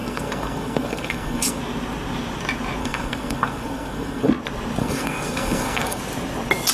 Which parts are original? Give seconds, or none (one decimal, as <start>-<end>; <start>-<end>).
1.6-2.8; 4.3-4.8; 6.0-6.7